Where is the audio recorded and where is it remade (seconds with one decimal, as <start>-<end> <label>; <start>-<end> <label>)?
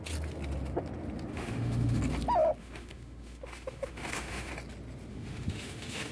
0.0-1.3 recorded; 1.3-2.0 remade; 2.0-2.6 recorded; 2.6-4.5 remade; 4.5-5.1 recorded; 5.1-6.1 remade